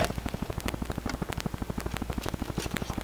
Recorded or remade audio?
recorded